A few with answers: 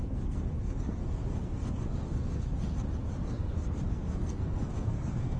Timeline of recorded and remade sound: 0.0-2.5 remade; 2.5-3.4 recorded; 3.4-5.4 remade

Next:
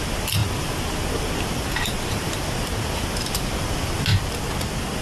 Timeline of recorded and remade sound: 0.0-5.0 recorded

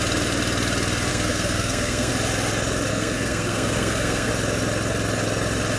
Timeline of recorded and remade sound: 0.0-1.1 recorded; 1.1-2.1 remade; 2.1-2.9 recorded; 2.9-4.3 remade; 4.3-5.8 recorded

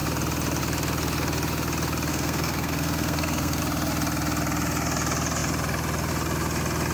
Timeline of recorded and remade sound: 0.0-2.1 recorded; 2.1-3.6 remade; 3.6-6.9 recorded